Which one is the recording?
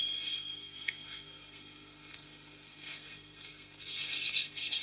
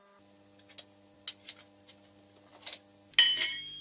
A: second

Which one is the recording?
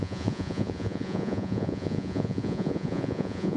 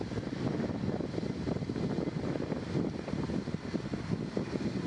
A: second